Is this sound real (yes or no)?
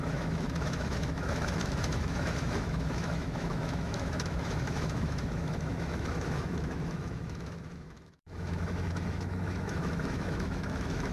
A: no